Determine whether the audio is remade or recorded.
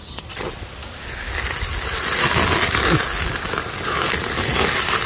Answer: recorded